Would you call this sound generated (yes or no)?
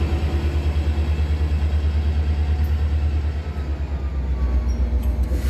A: no